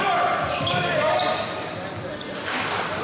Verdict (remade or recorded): recorded